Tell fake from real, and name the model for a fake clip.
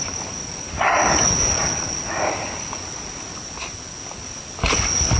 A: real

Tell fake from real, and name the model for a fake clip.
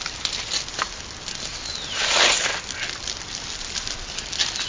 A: real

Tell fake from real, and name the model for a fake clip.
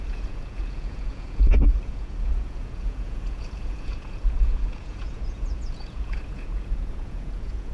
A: fake, vocoder, Vocos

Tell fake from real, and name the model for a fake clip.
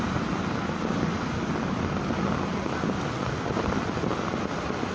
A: real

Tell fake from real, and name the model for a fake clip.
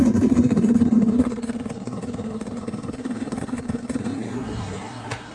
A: fake, codec, SNAC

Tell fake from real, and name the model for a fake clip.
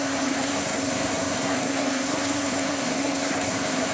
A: fake, codec, SNAC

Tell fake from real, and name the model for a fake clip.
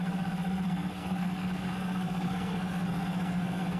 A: fake, codec, SNAC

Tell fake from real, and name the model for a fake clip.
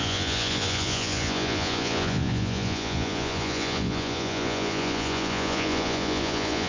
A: fake, vocoder, Vocos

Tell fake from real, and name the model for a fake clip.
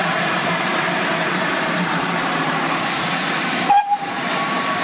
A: fake, vocoder, BigVGAN v2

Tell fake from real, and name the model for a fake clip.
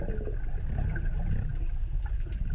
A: real